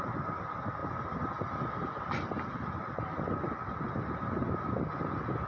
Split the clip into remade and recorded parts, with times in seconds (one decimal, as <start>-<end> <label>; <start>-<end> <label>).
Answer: 0.0-5.5 recorded